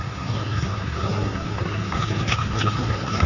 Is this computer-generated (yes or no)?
yes